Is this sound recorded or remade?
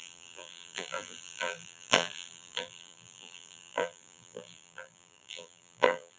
remade